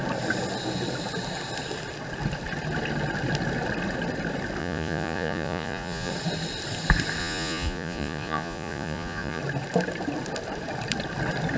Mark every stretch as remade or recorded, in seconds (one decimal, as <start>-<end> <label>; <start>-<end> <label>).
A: 0.0-4.6 recorded; 4.6-6.1 remade; 6.1-7.2 recorded; 7.2-9.4 remade; 9.4-11.6 recorded